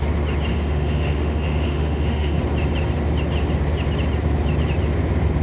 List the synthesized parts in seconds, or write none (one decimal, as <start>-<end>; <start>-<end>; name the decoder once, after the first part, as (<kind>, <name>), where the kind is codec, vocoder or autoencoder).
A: 0.5-2.4 (autoencoder, DAC-VAE)